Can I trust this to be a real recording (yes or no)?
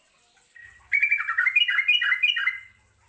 yes